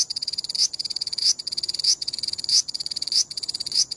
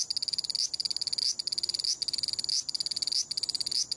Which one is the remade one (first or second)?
first